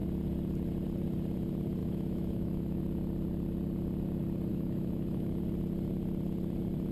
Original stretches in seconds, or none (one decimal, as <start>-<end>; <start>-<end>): 0.0-1.8; 2.8-4.5; 5.4-6.9